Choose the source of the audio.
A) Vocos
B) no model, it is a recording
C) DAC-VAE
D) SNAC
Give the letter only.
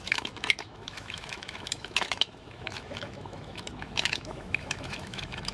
C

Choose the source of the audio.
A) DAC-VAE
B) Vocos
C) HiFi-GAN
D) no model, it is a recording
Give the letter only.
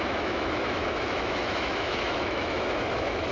A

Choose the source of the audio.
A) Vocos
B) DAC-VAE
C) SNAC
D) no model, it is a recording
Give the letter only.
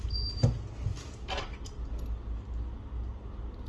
D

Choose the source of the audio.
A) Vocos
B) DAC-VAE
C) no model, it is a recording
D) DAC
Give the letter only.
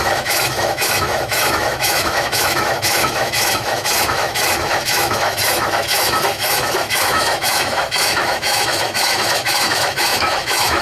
B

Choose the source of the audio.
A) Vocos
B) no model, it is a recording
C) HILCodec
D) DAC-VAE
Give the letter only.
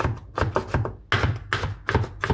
B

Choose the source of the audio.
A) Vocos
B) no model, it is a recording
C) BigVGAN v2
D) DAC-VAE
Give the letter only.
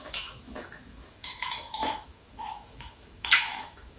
D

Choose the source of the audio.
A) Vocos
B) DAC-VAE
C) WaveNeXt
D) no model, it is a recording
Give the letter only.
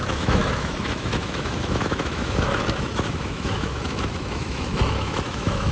B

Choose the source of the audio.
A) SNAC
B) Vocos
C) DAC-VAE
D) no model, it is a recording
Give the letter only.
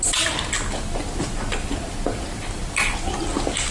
D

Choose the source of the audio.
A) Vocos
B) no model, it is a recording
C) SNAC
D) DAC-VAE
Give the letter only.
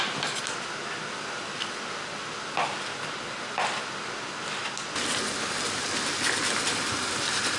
B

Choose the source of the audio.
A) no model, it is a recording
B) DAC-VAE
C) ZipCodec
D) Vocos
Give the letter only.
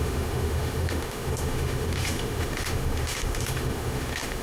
B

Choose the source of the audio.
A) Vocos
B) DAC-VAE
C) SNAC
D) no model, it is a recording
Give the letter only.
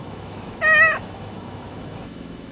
B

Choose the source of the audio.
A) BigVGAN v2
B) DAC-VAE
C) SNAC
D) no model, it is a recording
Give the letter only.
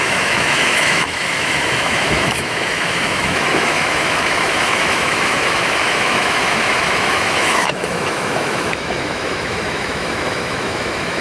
B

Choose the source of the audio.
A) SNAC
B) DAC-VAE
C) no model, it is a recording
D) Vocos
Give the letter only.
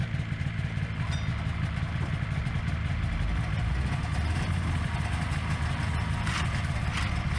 C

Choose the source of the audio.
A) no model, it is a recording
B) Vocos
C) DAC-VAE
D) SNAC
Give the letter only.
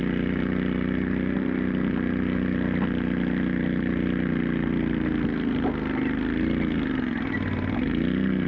A